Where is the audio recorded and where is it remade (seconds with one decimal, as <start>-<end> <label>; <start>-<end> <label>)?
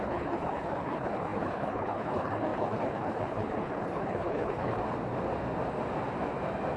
0.0-4.8 remade; 4.8-6.8 recorded